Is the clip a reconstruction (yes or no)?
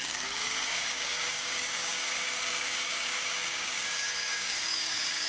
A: yes